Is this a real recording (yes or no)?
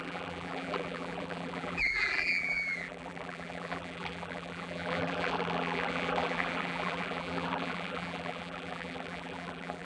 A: no